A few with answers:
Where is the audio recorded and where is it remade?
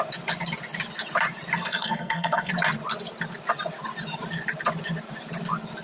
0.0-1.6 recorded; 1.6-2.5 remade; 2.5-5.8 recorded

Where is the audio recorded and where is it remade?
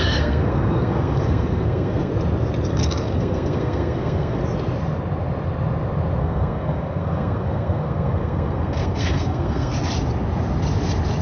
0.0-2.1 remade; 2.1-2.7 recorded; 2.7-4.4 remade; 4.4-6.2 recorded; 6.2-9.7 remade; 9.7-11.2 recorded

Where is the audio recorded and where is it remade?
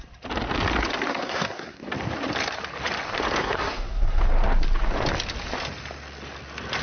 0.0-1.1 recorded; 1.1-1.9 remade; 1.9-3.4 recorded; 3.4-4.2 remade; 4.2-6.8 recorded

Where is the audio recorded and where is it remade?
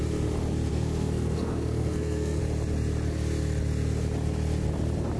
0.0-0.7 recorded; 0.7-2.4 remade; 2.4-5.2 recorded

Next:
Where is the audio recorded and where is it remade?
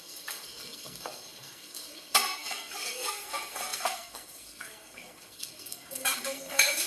0.0-6.9 remade